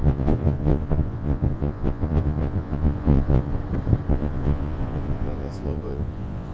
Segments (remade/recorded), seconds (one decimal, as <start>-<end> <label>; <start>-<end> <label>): 0.0-3.6 remade; 3.6-4.1 recorded; 4.1-6.5 remade